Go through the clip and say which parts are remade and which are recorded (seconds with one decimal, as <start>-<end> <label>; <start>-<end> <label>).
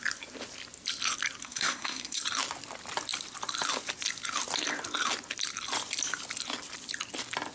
0.0-1.4 recorded; 1.4-2.2 remade; 2.2-7.5 recorded